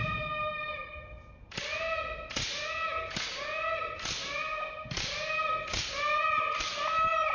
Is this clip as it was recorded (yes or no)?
yes